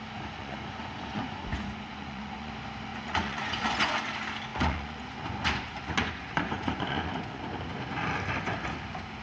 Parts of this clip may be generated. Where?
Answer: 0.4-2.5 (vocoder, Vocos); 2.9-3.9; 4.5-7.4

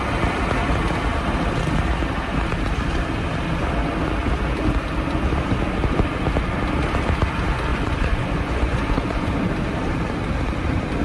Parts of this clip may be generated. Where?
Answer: 7.7-9.3 (vocoder, Vocos)